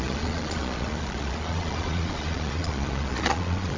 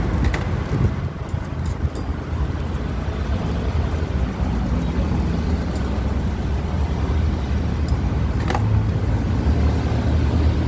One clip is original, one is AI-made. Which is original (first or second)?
second